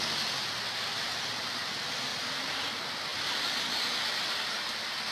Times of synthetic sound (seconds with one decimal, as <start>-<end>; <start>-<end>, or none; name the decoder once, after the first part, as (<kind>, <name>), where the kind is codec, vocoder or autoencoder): none